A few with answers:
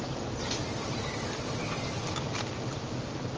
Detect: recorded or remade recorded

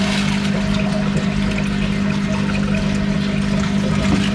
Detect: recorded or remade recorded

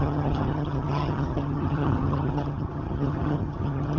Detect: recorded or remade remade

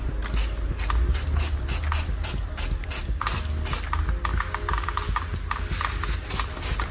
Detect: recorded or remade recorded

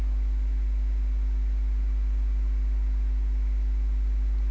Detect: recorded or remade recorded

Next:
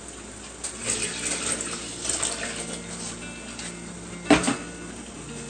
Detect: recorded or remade recorded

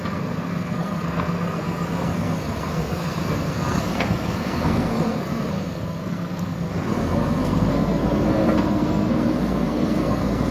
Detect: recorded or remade remade